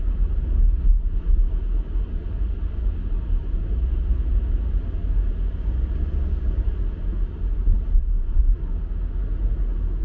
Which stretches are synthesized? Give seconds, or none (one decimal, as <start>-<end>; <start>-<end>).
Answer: none